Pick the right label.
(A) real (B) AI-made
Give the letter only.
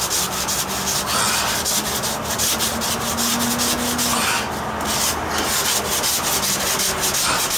A